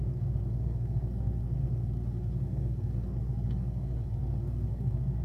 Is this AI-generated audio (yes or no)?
yes